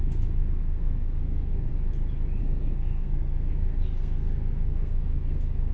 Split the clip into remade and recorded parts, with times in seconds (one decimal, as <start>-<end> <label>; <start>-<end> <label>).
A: 0.0-1.7 remade; 1.7-2.4 recorded; 2.4-5.7 remade